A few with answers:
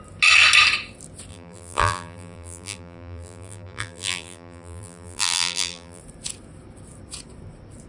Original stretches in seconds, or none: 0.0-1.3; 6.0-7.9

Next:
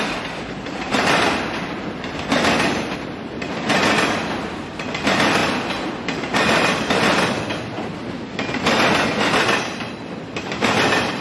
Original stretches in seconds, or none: 3.7-4.4; 5.4-6.0

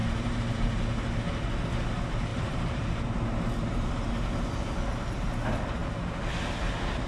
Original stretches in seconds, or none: 0.8-2.3; 4.1-7.1